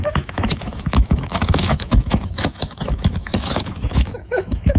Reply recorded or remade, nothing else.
remade